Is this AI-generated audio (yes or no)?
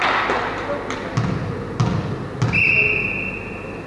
no